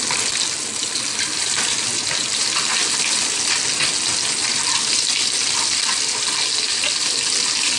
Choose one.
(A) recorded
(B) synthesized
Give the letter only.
A